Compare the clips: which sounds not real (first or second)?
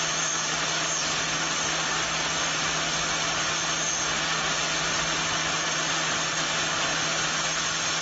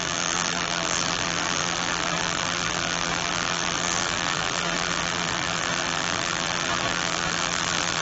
second